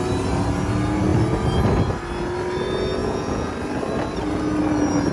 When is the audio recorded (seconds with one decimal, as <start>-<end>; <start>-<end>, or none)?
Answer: 0.0-3.0; 3.5-5.1